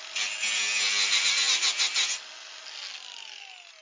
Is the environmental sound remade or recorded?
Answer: recorded